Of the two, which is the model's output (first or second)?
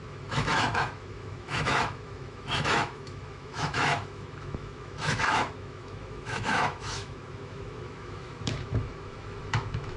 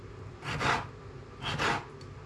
first